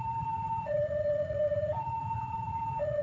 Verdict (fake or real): fake